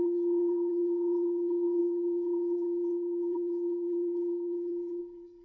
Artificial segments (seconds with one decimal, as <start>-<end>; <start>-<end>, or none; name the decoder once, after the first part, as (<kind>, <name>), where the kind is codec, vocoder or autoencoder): 0.0-5.4 (codec, SNAC)